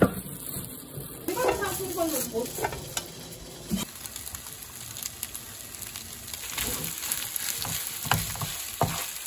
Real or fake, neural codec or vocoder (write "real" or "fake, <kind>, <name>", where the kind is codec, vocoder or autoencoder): real